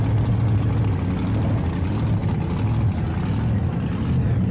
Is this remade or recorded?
recorded